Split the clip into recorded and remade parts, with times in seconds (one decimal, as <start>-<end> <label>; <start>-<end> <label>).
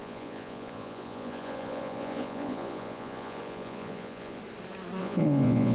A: 0.0-4.4 remade; 4.4-5.0 recorded; 5.0-5.7 remade